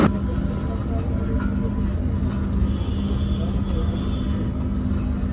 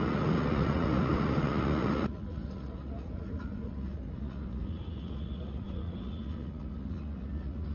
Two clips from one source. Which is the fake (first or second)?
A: second